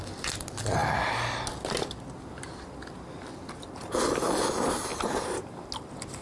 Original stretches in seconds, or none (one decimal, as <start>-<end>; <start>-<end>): 0.0-4.9; 5.7-6.2